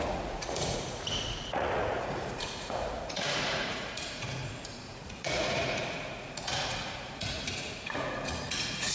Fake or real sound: fake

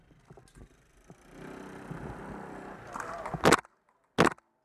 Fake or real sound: real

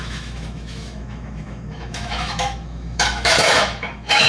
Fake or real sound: fake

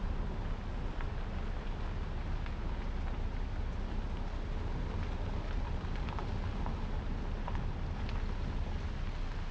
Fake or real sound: real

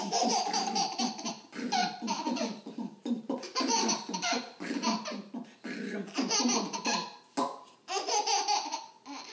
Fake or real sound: real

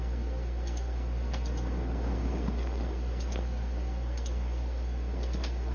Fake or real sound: fake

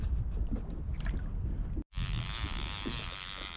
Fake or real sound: real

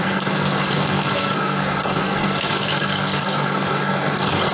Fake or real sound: fake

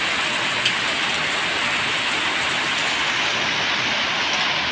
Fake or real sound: real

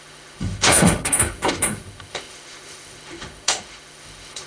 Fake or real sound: fake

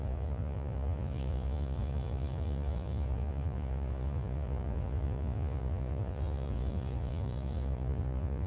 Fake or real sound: fake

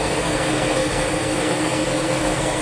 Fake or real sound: fake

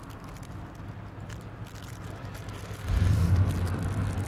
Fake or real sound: real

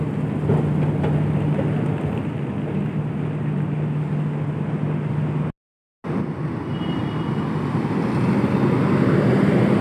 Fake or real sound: real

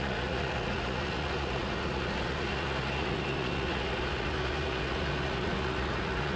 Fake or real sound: fake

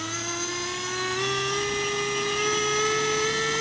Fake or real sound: real